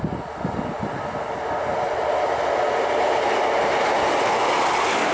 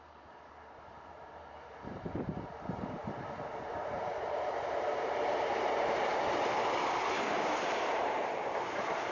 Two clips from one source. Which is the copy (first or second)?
second